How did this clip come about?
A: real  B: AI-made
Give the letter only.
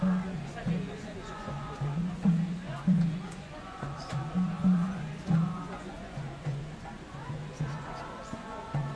B